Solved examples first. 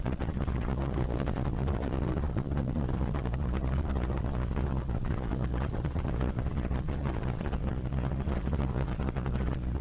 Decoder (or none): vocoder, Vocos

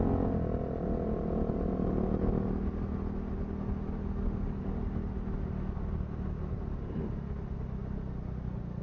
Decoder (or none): none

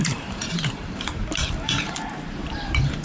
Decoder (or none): vocoder, BigVGAN v2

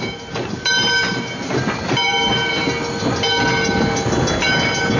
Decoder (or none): none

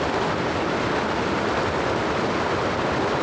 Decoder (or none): none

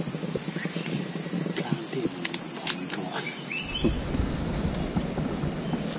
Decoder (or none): none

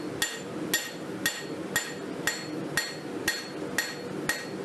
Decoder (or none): none